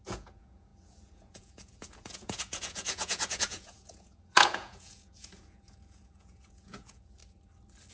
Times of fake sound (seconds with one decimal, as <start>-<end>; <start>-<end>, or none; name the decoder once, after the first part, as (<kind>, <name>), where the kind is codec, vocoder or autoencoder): 0.0-7.2 (vocoder, Vocos)